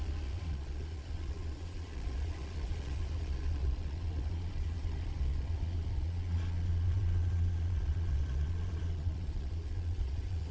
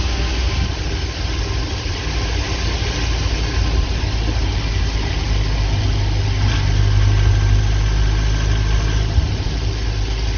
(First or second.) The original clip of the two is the second